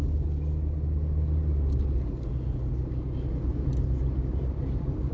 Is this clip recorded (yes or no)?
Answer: yes